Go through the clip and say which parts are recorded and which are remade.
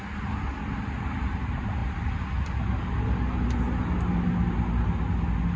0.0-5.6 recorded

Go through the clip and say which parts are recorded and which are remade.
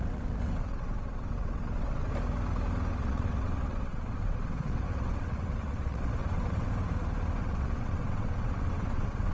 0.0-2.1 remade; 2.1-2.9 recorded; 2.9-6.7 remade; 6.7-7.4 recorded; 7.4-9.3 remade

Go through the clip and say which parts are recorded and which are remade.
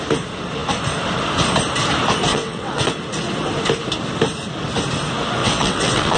0.0-2.3 recorded; 2.3-2.9 remade; 2.9-5.4 recorded; 5.4-6.2 remade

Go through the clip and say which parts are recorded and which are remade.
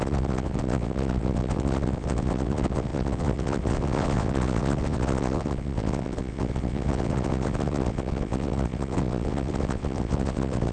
0.0-10.7 remade